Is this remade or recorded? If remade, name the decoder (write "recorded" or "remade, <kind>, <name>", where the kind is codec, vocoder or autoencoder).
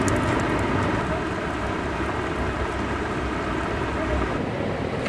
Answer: recorded